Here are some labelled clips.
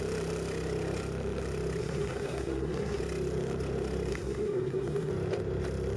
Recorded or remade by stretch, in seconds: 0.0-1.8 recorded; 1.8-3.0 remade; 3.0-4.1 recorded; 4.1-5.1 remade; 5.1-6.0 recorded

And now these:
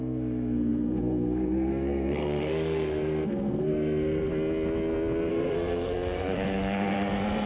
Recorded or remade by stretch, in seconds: 0.0-4.3 remade; 4.3-5.3 recorded; 5.3-7.5 remade

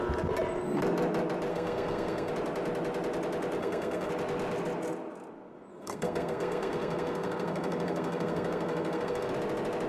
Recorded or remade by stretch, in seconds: 0.0-1.5 recorded; 1.5-2.3 remade; 2.3-3.6 recorded; 3.6-4.1 remade; 4.1-5.7 recorded; 5.7-9.3 remade; 9.3-9.9 recorded

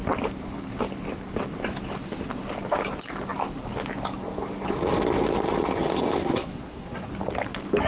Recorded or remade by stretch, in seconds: 0.0-6.2 recorded; 6.2-7.1 remade; 7.1-7.9 recorded

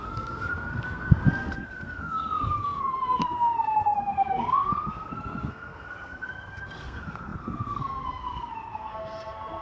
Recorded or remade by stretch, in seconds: 0.0-9.6 remade

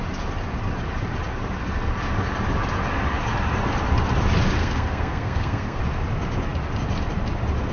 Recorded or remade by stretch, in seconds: 0.0-4.6 recorded; 4.6-5.8 remade; 5.8-7.7 recorded